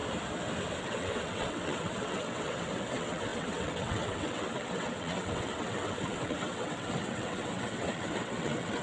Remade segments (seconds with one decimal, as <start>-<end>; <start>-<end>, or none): 0.8-8.8